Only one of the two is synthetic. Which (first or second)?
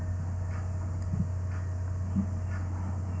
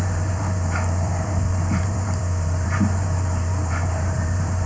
second